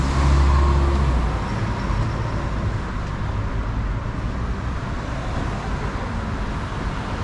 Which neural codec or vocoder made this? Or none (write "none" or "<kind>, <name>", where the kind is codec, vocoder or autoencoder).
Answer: none